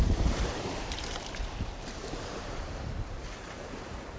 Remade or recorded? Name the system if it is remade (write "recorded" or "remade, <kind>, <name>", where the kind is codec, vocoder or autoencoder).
remade, vocoder, BigVGAN v2